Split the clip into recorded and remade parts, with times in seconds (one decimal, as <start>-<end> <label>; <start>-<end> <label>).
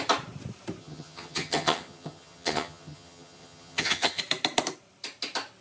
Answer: 0.0-0.8 recorded; 0.8-4.2 remade; 4.2-5.6 recorded